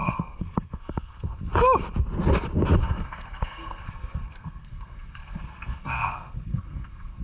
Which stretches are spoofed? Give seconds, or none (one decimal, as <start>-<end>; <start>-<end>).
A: 0.0-1.4; 2.8-7.2